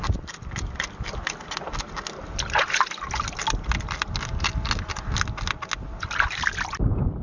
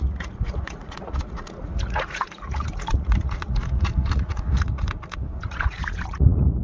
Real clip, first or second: first